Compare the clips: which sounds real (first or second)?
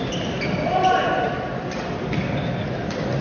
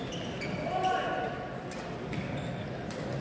second